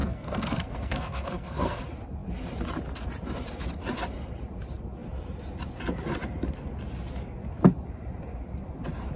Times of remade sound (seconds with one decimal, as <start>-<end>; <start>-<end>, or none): 0.0-1.8